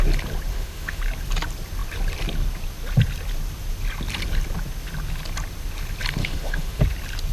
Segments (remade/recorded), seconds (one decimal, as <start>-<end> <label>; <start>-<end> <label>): 0.0-0.5 recorded; 0.5-1.0 remade; 1.0-6.2 recorded; 6.2-6.8 remade; 6.8-7.3 recorded